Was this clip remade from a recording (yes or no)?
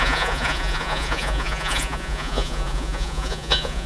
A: yes